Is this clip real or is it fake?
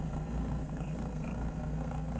fake